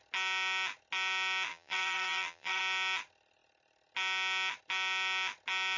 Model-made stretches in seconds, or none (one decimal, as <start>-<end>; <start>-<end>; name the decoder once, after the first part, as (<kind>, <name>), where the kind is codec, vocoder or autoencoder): 1.5-2.6 (vocoder, BigVGAN v2)